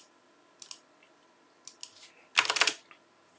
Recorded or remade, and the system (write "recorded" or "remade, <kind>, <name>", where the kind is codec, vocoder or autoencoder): recorded